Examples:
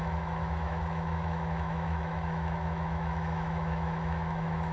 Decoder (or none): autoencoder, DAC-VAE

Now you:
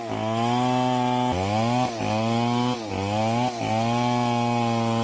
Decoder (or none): none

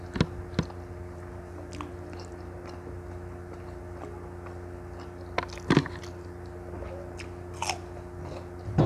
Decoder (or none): none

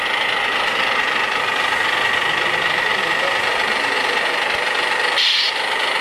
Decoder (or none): none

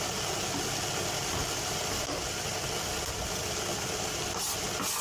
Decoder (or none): none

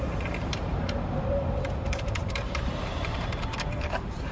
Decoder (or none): vocoder, BigVGAN v2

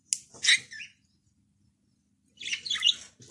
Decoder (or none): none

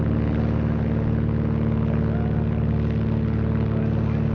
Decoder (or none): none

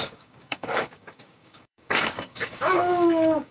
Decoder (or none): codec, DAC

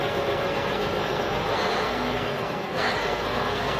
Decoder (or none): codec, SNAC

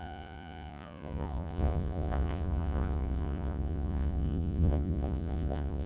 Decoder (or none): vocoder, Vocos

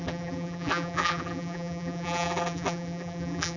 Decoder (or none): vocoder, BigVGAN v2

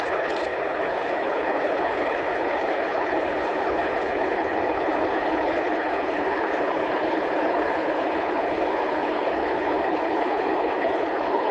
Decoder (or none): codec, HILCodec